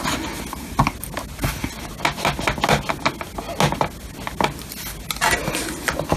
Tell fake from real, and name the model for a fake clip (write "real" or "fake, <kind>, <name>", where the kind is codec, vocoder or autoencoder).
real